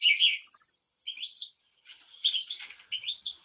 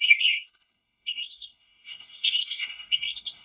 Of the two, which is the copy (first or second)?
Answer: second